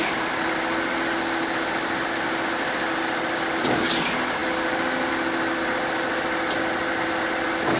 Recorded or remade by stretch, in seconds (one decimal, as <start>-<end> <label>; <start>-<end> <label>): 0.0-7.8 recorded